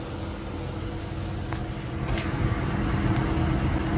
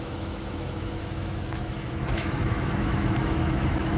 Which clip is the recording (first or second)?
first